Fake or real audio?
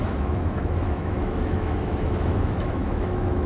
fake